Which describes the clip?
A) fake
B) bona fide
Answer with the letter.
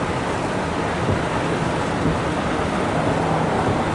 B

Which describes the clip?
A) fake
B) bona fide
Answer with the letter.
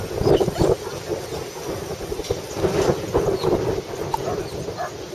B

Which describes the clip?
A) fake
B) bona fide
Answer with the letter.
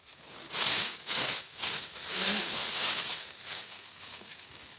A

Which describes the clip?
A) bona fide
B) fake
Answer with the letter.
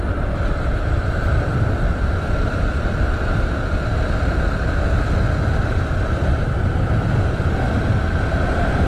A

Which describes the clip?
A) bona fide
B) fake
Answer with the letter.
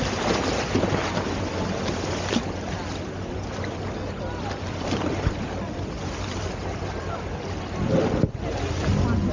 A